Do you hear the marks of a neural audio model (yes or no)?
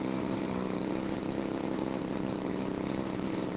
yes